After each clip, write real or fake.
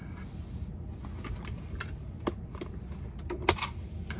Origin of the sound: real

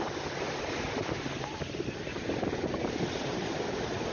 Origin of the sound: real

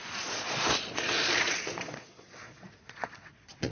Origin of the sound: fake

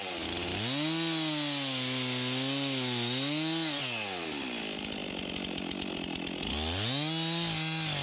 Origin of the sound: real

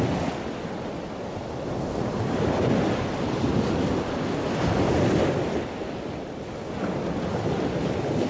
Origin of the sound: real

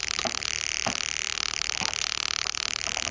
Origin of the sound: real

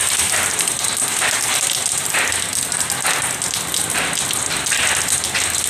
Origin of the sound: real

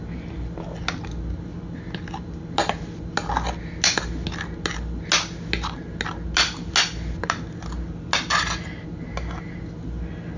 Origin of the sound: real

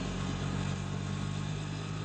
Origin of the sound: real